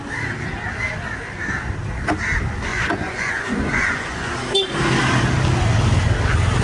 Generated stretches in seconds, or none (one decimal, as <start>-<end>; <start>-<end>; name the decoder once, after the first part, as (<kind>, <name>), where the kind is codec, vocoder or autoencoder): 2.7-4.3 (vocoder, Vocos)